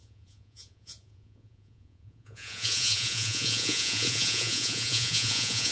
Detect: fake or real fake